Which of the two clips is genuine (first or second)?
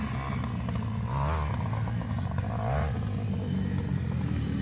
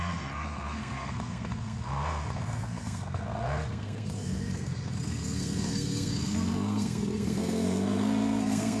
first